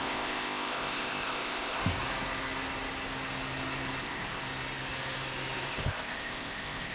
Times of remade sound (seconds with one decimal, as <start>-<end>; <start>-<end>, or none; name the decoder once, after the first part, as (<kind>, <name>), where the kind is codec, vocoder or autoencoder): 0.0-1.8 (codec, ZipCodec); 4.0-4.4; 5.7-6.9

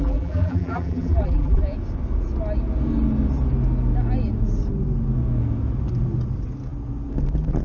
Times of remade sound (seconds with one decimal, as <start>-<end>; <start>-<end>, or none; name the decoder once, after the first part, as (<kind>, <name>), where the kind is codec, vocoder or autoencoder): 0.0-1.6 (vocoder, BigVGAN v2)

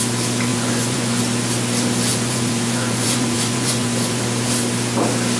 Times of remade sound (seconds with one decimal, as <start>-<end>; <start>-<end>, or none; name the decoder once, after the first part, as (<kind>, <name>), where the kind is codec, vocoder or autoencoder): 0.5-1.2 (vocoder, Vocos); 2.1-4.2

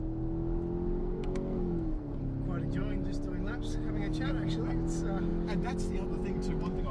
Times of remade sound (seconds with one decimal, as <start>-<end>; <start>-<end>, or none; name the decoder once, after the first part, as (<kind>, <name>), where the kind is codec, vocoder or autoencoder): 1.0-2.2 (codec, SNAC)

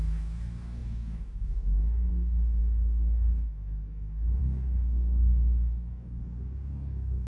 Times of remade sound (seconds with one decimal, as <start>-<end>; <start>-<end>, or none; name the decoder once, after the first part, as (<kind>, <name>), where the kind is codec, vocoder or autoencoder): 0.0-7.3 (codec, DAC)

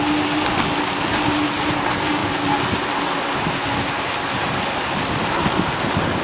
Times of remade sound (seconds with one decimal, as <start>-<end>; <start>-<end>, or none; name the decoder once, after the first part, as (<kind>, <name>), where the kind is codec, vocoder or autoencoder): none